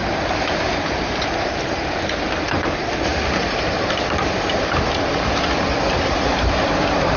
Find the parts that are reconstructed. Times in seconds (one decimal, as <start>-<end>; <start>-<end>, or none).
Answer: 0.0-3.1; 5.9-7.2